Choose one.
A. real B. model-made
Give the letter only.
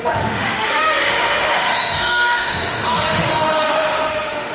B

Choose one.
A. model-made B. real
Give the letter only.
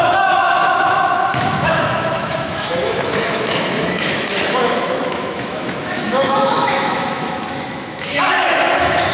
A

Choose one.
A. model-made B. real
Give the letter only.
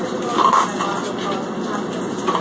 B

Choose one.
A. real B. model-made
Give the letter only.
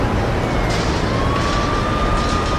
A